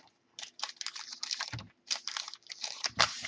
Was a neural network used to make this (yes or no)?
yes